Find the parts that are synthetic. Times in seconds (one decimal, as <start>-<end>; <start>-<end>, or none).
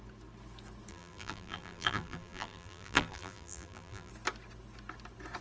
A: 0.9-4.1